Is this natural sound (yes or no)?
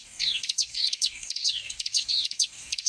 no